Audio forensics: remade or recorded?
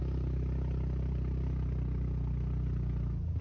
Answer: recorded